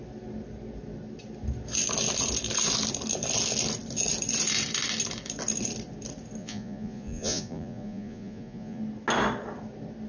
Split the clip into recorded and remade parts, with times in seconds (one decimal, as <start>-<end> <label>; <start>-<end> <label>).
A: 0.0-6.4 recorded; 6.4-8.8 remade; 8.8-10.1 recorded